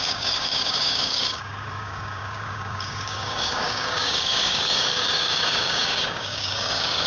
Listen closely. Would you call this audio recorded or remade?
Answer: remade